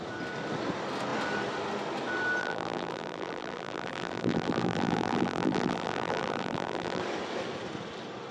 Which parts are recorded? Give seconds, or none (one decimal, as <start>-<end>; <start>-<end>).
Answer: 0.0-2.4; 7.0-8.3